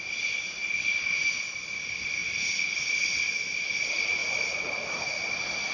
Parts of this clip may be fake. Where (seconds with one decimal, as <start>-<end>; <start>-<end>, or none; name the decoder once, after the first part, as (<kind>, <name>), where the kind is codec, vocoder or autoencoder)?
0.0-0.6 (vocoder, BigVGAN v2); 1.4-2.2; 3.5-5.7